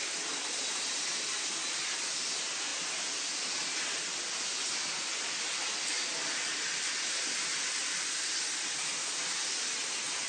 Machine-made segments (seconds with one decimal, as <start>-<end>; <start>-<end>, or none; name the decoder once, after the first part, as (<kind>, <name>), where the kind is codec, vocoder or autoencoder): none